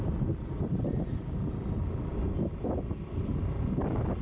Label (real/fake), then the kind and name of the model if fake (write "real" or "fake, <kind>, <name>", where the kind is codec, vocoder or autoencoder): real